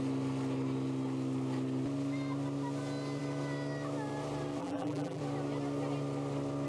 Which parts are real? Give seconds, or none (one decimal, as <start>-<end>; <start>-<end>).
0.0-4.6; 5.2-6.7